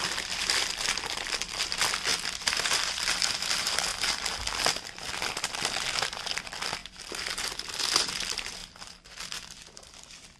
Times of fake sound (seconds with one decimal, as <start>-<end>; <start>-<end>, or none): 0.0-3.9; 5.3-8.6; 9.2-10.4